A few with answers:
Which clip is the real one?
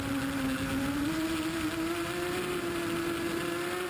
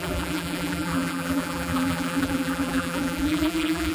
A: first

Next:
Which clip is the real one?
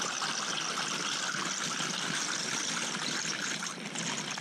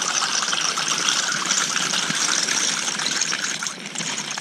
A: first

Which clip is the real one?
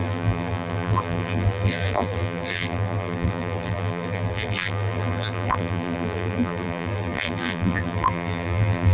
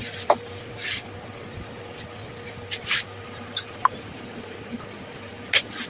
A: second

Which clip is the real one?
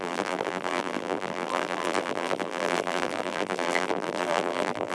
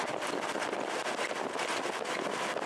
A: second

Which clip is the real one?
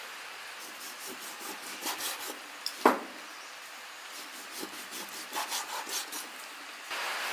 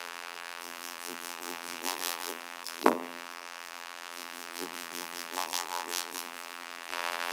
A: first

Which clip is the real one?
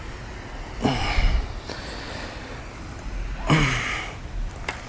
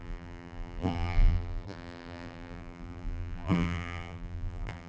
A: first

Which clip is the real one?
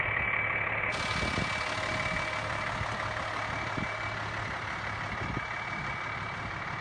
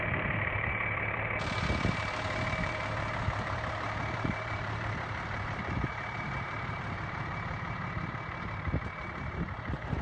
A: first